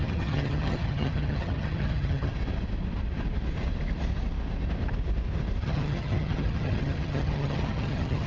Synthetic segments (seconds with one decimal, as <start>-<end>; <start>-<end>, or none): 0.0-2.3; 5.6-8.3